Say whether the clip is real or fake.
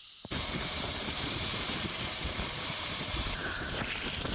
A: fake